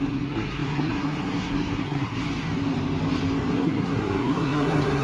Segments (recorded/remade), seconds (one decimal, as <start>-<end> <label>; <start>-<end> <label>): 0.0-2.2 remade; 2.2-3.5 recorded; 3.5-5.0 remade